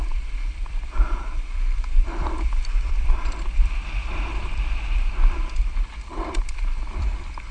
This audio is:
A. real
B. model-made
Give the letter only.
B